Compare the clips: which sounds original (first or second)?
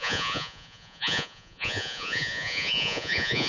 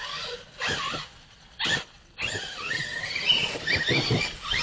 second